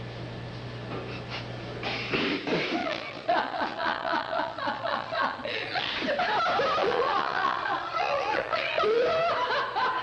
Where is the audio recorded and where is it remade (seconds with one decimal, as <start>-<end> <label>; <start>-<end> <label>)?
0.0-2.8 recorded; 2.8-5.9 remade; 5.9-6.8 recorded; 6.8-9.0 remade; 9.0-10.0 recorded